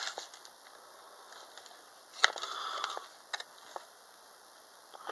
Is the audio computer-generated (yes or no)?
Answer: no